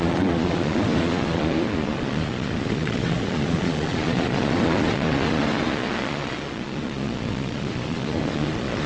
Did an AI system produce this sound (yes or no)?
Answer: yes